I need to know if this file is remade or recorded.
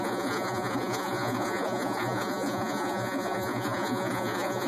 remade